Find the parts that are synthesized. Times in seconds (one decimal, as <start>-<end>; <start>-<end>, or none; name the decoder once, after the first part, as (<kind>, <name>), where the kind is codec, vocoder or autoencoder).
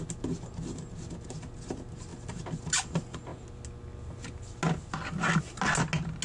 none